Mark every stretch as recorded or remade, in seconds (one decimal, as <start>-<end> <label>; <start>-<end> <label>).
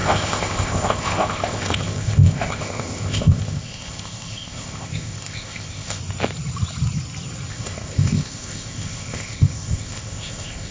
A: 0.0-6.0 remade; 6.0-7.5 recorded; 7.5-10.7 remade